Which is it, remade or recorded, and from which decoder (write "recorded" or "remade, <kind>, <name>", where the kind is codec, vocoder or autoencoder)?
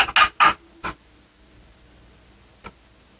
recorded